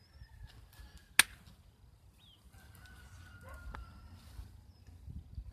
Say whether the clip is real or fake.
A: real